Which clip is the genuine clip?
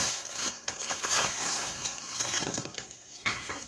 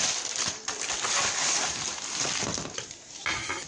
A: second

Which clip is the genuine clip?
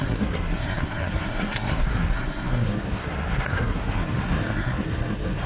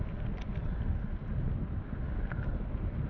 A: second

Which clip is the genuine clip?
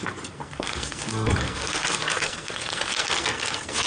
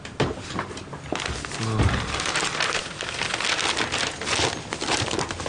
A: second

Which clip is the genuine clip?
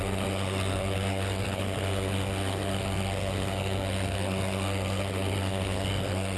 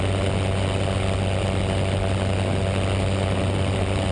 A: second